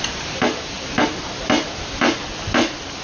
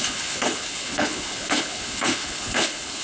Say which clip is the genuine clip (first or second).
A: first